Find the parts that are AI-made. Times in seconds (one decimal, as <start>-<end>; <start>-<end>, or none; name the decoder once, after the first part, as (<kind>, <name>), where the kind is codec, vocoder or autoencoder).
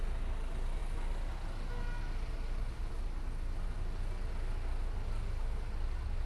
none